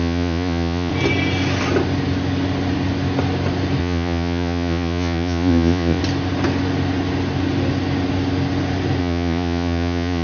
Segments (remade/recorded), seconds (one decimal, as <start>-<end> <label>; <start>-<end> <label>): 0.0-0.9 remade; 0.9-3.8 recorded; 3.8-6.0 remade; 6.0-9.0 recorded; 9.0-10.2 remade

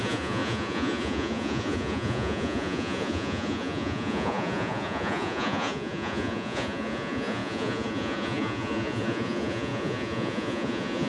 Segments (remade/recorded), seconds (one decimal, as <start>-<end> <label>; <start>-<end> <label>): 0.0-11.1 remade

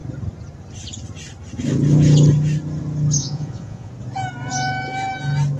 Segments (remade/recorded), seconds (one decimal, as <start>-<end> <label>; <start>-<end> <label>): 0.0-3.2 recorded; 3.2-3.9 remade; 3.9-5.6 recorded

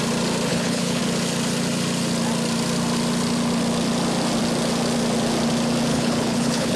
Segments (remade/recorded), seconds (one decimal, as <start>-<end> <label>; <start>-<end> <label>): 0.0-0.5 recorded; 0.5-1.0 remade; 1.0-5.9 recorded; 5.9-6.8 remade

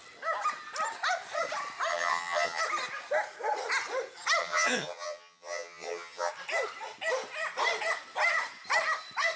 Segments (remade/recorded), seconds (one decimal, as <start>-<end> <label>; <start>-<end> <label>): 0.0-1.9 recorded; 1.9-2.6 remade; 2.6-4.4 recorded; 4.4-6.3 remade; 6.3-9.4 recorded

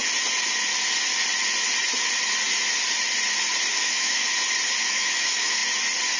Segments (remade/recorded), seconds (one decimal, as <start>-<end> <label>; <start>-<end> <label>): 0.0-3.7 recorded; 3.7-4.2 remade; 4.2-4.8 recorded; 4.8-5.6 remade; 5.6-6.2 recorded

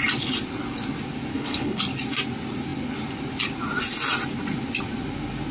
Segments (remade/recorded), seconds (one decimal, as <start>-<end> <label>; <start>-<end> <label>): 0.0-1.3 recorded; 1.3-1.8 remade; 1.8-5.5 recorded